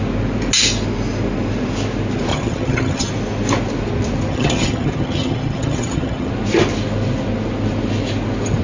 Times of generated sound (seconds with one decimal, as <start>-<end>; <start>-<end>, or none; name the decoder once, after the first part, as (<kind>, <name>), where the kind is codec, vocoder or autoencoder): 2.3-3.1 (vocoder, HiFi-GAN); 4.3-6.3